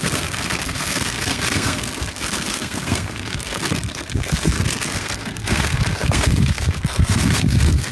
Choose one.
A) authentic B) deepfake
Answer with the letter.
B